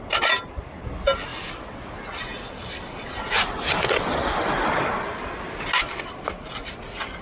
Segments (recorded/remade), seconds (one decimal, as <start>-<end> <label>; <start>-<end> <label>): 0.0-7.2 recorded